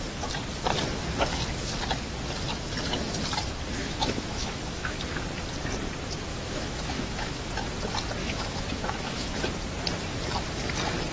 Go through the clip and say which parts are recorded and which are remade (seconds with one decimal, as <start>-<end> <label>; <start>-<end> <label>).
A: 0.0-3.8 recorded; 3.8-5.1 remade; 5.1-6.3 recorded; 6.3-7.5 remade; 7.5-8.2 recorded; 8.2-9.4 remade; 9.4-11.1 recorded